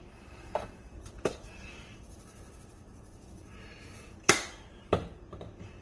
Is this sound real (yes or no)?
no